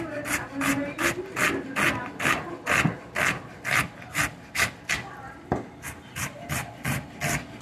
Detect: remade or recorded recorded